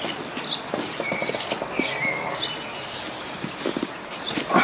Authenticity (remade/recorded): recorded